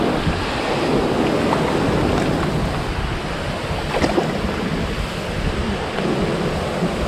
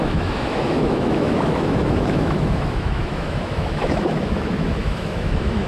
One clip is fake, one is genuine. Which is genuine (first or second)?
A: first